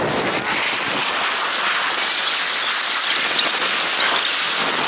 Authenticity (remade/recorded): recorded